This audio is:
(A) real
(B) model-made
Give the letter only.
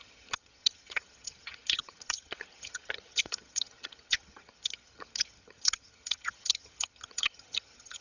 B